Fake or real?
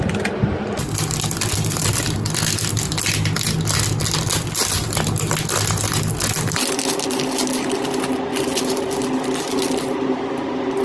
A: real